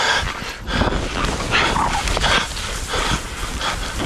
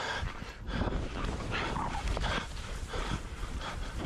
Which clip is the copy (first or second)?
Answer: second